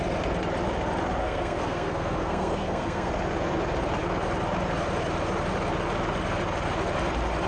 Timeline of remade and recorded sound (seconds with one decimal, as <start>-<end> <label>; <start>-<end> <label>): 0.0-1.2 recorded; 1.2-3.1 remade; 3.1-7.5 recorded

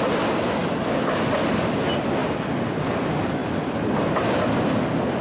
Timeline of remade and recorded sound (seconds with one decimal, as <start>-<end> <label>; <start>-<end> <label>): 0.0-5.2 recorded